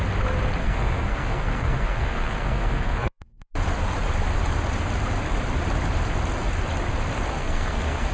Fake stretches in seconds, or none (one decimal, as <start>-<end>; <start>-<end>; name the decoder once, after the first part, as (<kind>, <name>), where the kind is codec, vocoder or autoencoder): 0.6-3.5 (codec, SNAC); 7.3-8.1